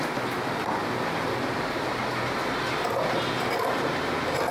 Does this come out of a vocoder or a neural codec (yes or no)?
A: no